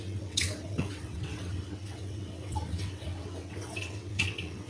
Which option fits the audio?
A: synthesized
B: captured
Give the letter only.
A